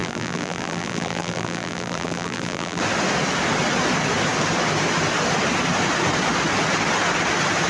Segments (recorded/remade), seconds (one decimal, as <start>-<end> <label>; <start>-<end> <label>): 0.0-2.8 remade; 2.8-7.7 recorded